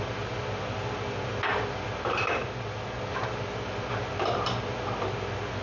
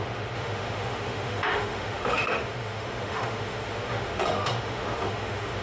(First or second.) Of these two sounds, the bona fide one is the first